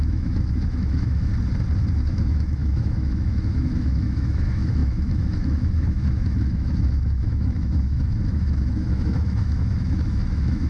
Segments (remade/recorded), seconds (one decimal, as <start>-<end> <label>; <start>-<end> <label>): 0.0-1.3 remade; 1.3-1.9 recorded; 1.9-10.7 remade